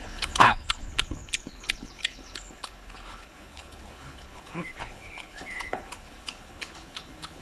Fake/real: fake